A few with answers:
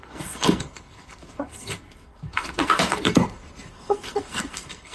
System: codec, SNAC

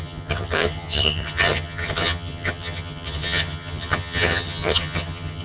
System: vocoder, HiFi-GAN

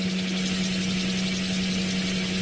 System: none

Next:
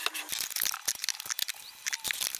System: none